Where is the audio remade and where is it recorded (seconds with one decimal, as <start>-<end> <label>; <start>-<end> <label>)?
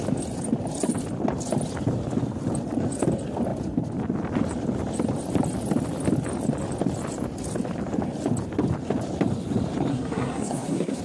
0.0-9.9 recorded; 9.9-11.0 remade